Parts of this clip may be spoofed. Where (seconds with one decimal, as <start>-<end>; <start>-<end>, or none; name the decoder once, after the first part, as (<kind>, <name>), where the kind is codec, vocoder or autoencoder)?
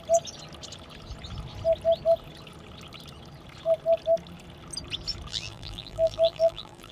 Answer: 5.3-6.9 (vocoder, BigVGAN v2)